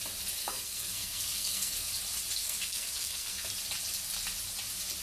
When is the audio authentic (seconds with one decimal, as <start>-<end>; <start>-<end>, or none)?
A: 0.0-0.4; 1.9-2.4; 3.5-5.0